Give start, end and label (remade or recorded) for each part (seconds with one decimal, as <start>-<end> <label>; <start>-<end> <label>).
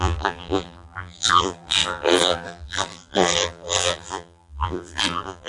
0.0-5.5 remade